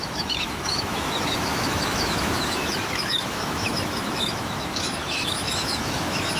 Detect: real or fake fake